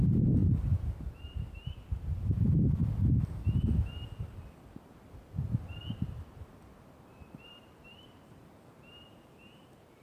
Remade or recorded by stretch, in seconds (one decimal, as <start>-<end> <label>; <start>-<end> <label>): 0.0-2.8 remade; 2.8-6.9 recorded; 6.9-10.0 remade